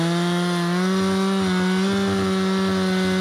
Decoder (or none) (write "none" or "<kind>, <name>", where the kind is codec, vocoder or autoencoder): none